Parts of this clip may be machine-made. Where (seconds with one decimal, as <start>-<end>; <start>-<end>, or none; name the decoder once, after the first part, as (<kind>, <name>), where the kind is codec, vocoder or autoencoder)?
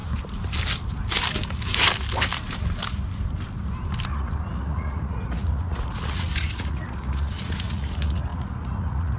4.1-9.2 (vocoder, Vocos)